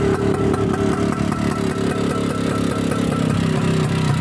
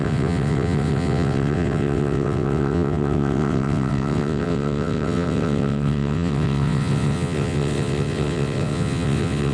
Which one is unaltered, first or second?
first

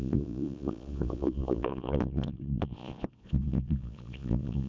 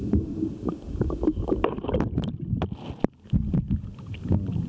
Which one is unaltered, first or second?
second